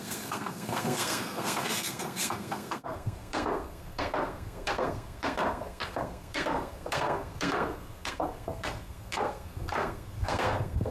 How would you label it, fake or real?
fake